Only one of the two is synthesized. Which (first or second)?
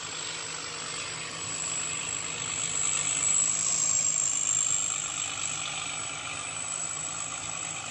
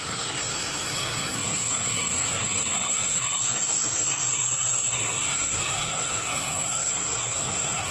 second